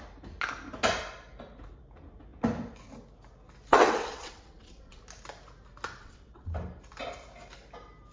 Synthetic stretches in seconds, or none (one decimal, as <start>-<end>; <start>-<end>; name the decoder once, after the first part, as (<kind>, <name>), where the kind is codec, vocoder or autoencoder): 3.7-5.0 (vocoder, WaveNeXt); 6.0-6.5